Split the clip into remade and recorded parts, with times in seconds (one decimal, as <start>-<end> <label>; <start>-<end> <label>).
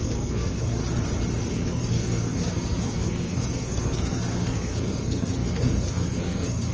0.0-0.8 remade; 0.8-1.5 recorded; 1.5-6.7 remade